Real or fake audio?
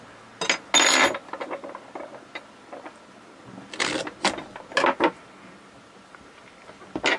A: real